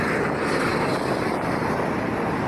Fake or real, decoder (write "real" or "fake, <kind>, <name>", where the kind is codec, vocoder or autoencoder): real